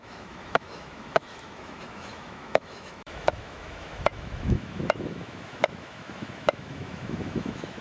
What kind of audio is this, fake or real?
fake